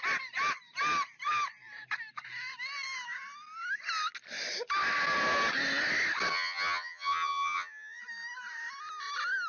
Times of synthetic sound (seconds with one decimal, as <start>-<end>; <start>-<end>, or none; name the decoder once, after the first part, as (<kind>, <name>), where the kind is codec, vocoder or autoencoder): 6.3-8.0 (vocoder, HiFi-GAN)